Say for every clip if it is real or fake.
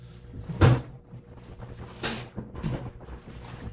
real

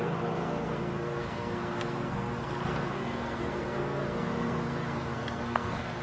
fake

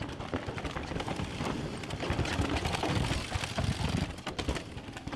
real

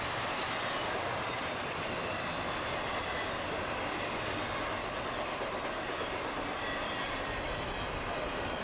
real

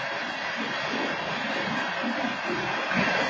real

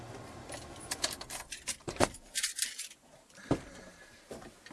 fake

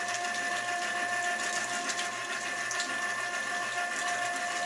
real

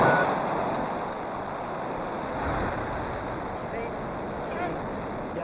real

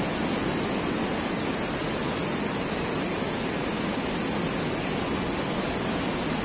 real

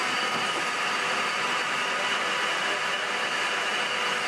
real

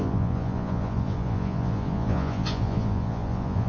fake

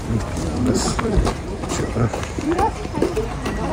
fake